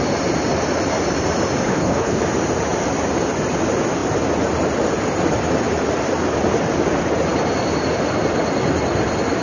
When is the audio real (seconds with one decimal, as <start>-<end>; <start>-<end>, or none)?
0.0-1.7; 2.2-9.4